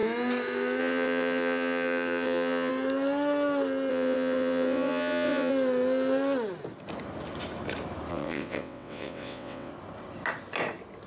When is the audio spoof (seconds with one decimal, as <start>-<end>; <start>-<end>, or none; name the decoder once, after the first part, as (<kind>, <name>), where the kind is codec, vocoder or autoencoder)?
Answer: 0.8-2.7 (vocoder, WaveNeXt); 3.9-5.5; 8.1-9.7